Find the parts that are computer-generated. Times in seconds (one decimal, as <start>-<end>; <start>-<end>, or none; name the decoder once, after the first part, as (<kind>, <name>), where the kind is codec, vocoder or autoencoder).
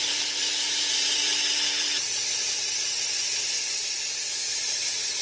0.0-1.2 (vocoder, Vocos); 4.3-5.2